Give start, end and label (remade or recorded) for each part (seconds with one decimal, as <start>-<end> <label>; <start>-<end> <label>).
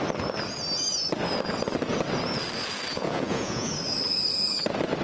0.0-2.9 recorded; 2.9-3.7 remade; 3.7-5.0 recorded